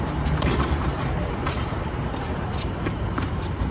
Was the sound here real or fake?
fake